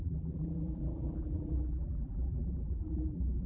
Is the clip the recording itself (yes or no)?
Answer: no